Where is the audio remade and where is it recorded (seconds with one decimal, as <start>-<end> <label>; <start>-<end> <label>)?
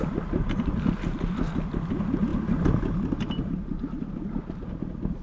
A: 0.0-5.2 recorded